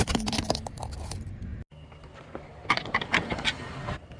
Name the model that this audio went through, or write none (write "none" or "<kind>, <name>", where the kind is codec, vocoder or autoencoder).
none